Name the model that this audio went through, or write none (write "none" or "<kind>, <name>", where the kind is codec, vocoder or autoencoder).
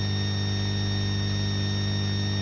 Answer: none